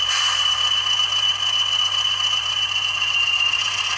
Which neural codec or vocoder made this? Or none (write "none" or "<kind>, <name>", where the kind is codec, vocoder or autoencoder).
none